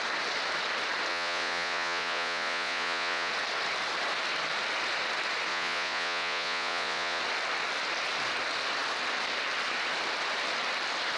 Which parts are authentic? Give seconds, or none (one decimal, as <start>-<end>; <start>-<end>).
0.0-1.1; 3.3-5.5; 7.2-11.2